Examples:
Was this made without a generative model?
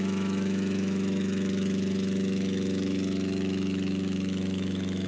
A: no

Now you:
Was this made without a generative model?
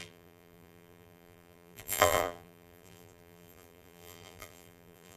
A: no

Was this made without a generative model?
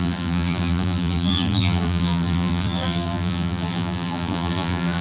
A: no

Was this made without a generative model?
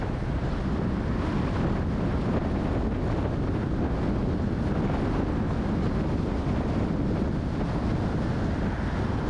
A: yes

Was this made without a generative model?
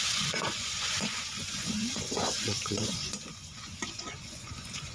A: no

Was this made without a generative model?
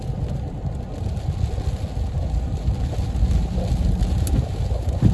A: yes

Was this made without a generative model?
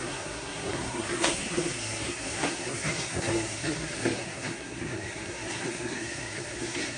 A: no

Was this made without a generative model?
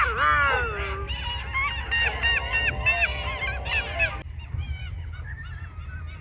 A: yes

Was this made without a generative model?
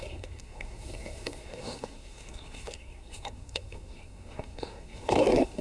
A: no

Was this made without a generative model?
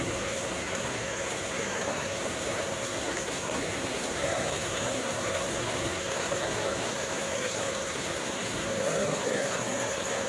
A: no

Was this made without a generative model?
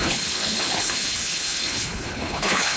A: no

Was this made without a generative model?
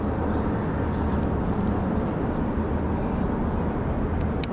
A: yes